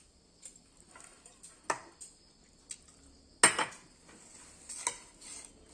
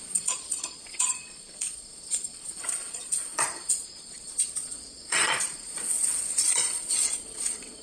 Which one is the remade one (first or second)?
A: second